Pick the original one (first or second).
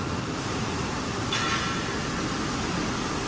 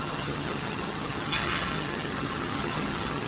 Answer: first